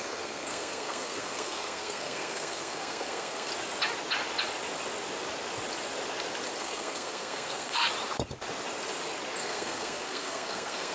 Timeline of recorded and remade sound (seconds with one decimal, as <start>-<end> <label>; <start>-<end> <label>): 0.0-3.5 remade; 3.5-6.6 recorded; 6.6-7.8 remade; 7.8-9.4 recorded; 9.4-10.9 remade